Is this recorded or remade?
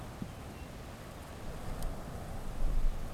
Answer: recorded